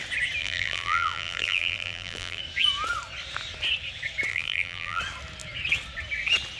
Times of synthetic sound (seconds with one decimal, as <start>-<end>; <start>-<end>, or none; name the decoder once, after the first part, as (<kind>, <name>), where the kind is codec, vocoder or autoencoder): 0.4-2.4 (vocoder, BigVGAN v2); 4.3-5.0